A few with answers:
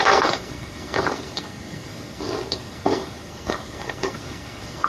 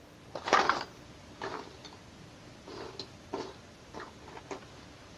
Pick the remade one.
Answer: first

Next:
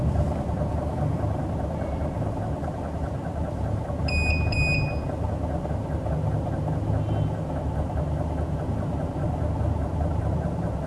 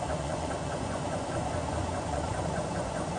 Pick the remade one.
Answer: second